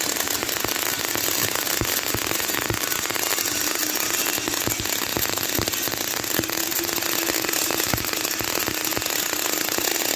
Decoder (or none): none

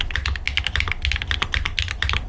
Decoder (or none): none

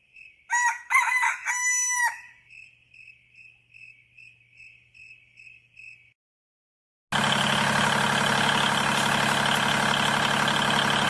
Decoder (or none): none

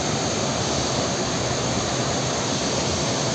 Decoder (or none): none